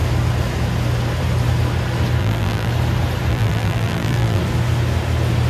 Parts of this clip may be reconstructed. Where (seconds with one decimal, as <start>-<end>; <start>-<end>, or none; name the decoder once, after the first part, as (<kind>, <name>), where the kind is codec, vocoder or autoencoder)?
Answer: 2.2-2.7 (vocoder, BigVGAN v2); 3.3-4.4